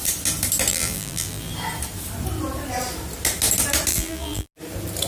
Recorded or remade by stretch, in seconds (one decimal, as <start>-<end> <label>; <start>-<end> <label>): 0.0-0.7 recorded; 0.7-1.5 remade; 1.5-3.9 recorded; 3.9-4.5 remade; 4.5-5.1 recorded